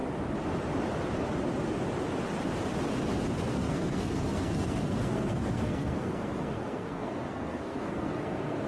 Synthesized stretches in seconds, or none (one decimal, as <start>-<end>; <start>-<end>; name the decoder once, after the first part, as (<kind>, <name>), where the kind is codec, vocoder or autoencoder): 3.5-8.7 (codec, SNAC)